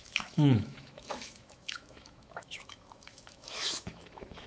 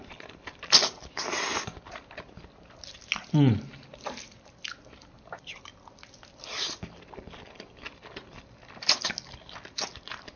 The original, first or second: second